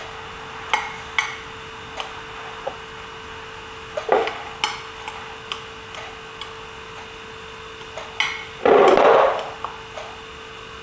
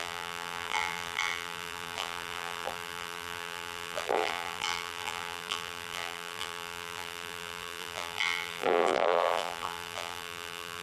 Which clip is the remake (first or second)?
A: second